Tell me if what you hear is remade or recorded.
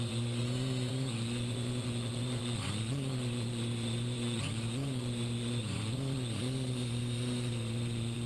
remade